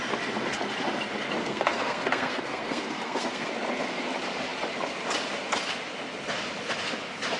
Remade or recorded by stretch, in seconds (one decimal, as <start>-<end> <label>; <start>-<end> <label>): 0.0-1.4 recorded; 1.4-3.5 remade; 3.5-7.4 recorded